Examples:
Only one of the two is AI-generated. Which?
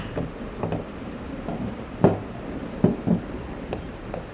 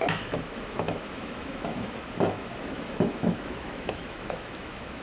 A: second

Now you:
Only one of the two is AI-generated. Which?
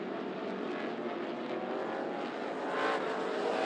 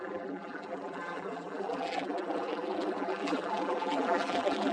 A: second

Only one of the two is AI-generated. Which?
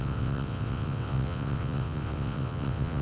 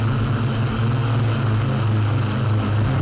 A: first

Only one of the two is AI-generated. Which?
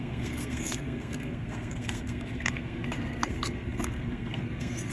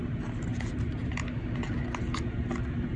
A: first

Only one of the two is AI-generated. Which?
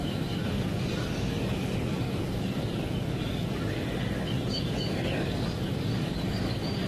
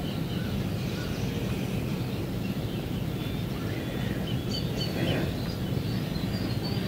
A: first